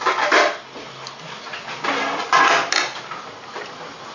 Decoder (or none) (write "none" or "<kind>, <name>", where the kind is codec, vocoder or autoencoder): none